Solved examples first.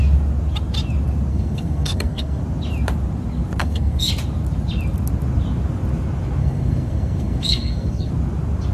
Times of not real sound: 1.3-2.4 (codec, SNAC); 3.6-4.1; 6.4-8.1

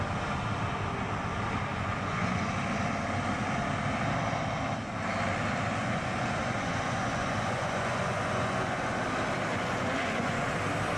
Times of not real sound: 1.7-2.5 (vocoder, Vocos); 5.8-9.0; 9.5-10.5

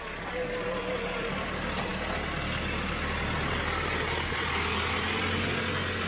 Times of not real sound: none